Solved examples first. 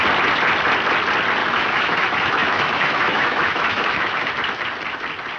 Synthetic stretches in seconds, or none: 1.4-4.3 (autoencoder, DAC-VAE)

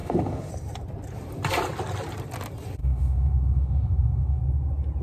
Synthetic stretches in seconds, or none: 0.0-0.5 (autoencoder, DAC-VAE); 2.8-4.4

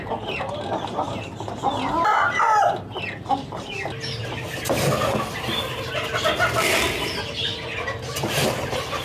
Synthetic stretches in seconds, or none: none

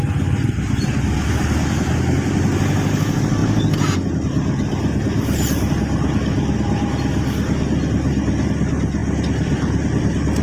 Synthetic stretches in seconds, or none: none

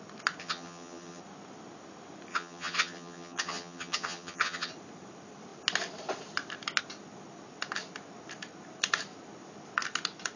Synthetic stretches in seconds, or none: 0.4-1.2 (vocoder, HiFi-GAN); 2.3-4.7

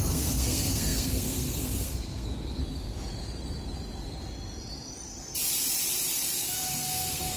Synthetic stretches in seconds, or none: 0.0-2.6 (codec, SNAC); 6.4-7.4